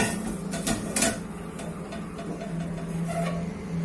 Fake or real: real